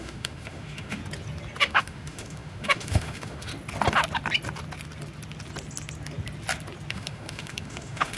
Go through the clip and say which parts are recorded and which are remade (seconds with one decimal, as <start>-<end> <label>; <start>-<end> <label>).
0.0-1.0 remade; 1.0-1.6 recorded; 1.6-3.5 remade; 3.5-6.9 recorded; 6.9-8.2 remade